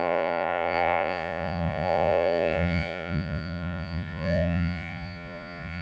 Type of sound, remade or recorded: remade